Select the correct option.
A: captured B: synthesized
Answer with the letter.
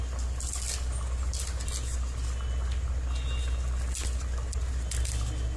A